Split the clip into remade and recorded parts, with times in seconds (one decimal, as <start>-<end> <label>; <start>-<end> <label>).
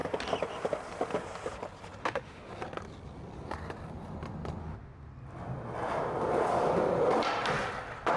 0.0-2.0 recorded; 2.0-2.5 remade; 2.5-4.6 recorded; 4.6-5.1 remade; 5.1-8.2 recorded